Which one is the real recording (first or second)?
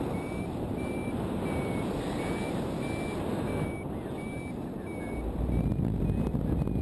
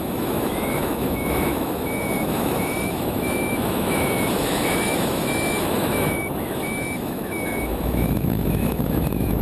first